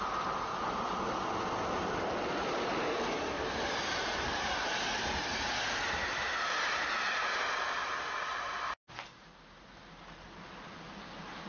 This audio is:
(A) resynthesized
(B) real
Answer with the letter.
B